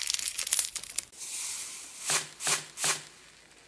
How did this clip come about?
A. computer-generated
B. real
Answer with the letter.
B